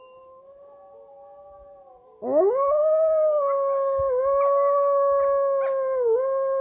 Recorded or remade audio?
recorded